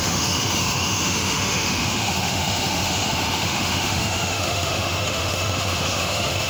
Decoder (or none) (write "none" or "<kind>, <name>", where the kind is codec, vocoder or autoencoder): autoencoder, DAC-VAE